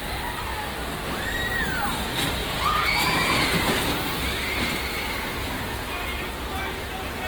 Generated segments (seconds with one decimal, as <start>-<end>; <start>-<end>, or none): 2.4-3.8